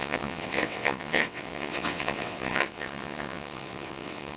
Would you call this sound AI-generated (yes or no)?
yes